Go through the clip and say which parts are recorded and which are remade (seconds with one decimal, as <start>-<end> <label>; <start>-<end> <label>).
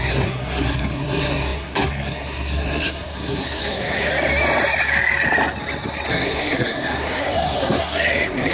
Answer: 0.0-4.1 remade; 4.1-6.1 recorded; 6.1-8.5 remade